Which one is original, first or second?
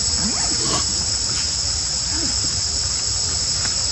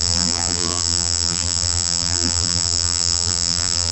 first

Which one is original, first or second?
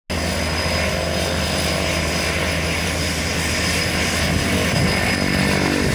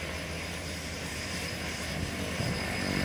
first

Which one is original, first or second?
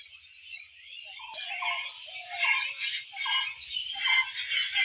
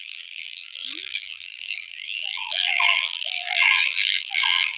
first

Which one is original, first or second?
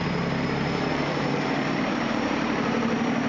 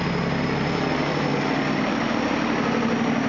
second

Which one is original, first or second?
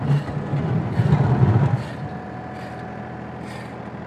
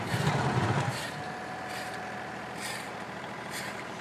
first